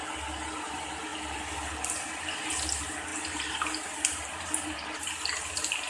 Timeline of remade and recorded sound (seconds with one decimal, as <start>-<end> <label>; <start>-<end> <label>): 0.0-5.9 recorded